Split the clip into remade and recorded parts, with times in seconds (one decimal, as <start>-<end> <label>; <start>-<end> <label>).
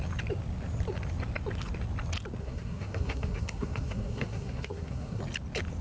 0.0-2.4 recorded; 2.4-5.2 remade; 5.2-5.8 recorded